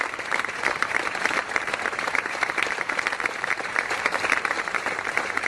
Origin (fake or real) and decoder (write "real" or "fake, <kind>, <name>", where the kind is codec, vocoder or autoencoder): fake, vocoder, BigVGAN v2